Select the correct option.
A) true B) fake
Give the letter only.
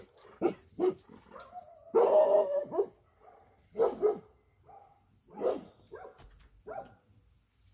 A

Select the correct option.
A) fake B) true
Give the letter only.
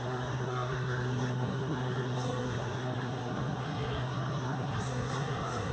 A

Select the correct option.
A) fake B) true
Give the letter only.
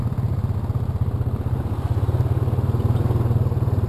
B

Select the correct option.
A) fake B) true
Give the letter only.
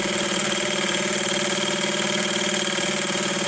B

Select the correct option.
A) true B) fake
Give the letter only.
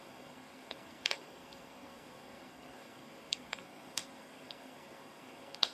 B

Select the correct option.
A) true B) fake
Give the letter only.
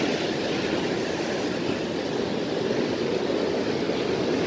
A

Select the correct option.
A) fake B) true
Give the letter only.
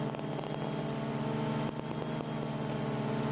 B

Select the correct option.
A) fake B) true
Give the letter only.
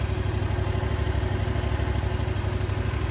B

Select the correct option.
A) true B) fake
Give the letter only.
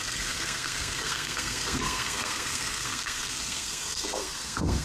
B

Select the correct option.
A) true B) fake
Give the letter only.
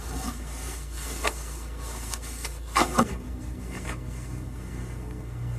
B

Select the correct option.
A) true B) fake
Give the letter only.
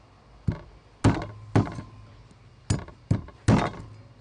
A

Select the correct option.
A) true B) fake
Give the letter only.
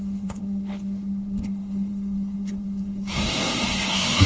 B